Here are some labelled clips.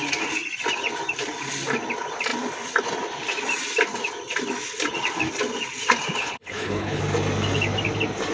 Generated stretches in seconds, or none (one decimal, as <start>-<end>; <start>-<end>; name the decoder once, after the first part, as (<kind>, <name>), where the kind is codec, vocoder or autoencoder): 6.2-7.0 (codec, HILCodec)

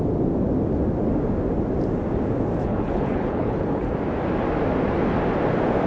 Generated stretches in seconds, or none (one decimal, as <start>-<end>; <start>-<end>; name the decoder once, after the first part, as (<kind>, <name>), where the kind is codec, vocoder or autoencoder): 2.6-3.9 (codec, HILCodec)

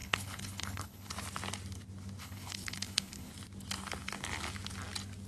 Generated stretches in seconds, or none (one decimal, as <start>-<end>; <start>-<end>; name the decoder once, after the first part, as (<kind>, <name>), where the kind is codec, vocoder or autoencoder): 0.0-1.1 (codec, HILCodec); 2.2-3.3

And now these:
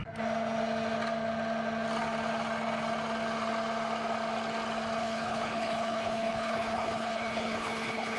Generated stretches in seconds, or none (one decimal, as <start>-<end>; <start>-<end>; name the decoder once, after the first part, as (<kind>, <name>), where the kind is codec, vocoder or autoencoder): 5.0-8.2 (codec, HILCodec)

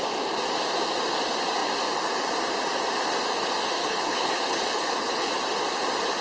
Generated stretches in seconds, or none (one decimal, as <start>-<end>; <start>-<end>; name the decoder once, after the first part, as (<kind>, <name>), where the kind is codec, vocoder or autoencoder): 3.8-5.3 (codec, HILCodec)

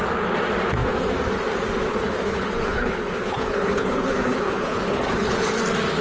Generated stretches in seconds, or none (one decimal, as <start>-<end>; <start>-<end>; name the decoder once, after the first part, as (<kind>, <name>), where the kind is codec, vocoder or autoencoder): 1.9-5.5 (codec, HILCodec)